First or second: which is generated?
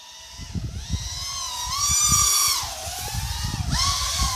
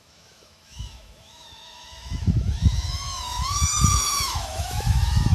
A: second